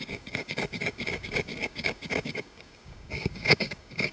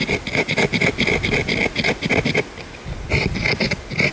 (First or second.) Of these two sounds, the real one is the second